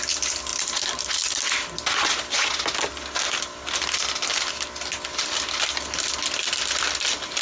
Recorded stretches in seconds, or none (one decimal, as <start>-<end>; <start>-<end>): 0.0-7.4